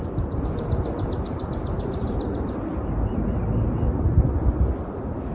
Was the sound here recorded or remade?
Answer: recorded